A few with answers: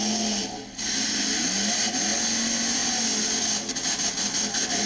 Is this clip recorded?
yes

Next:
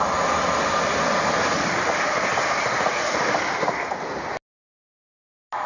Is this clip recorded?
yes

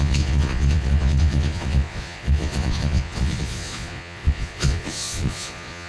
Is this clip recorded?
no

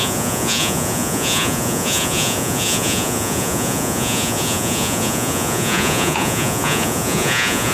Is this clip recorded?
no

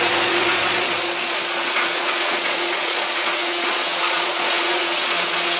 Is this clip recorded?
no